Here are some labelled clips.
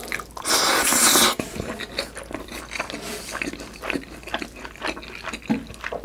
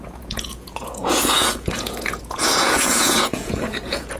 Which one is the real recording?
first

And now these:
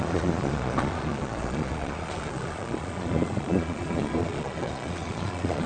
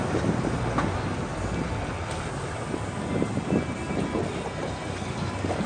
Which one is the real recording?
second